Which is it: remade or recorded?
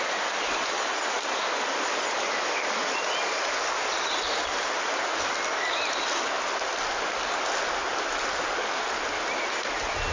recorded